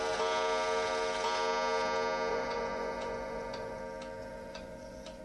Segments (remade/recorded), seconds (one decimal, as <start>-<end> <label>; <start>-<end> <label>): 0.0-2.3 recorded; 2.3-3.8 remade; 3.8-4.2 recorded; 4.2-5.2 remade